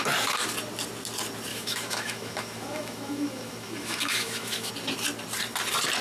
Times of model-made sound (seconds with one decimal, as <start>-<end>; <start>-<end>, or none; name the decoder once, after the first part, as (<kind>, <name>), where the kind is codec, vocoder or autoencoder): 1.5-4.7 (autoencoder, DAC-VAE)